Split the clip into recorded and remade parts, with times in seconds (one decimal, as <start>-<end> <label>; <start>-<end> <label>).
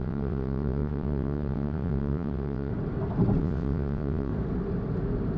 0.0-2.7 remade; 2.7-3.4 recorded; 3.4-4.3 remade; 4.3-5.4 recorded